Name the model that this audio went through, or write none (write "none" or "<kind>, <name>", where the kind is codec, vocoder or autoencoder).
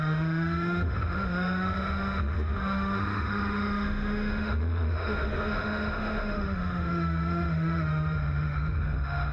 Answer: autoencoder, DAC-VAE